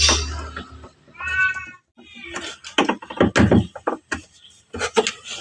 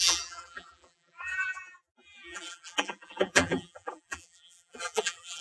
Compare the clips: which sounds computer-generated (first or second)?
second